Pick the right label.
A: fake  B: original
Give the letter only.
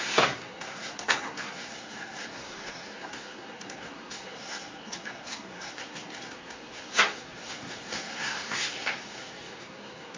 A